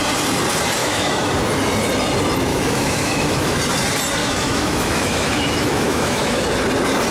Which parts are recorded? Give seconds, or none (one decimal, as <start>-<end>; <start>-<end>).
0.0-0.8; 1.3-2.5; 3.6-4.2; 6.4-7.1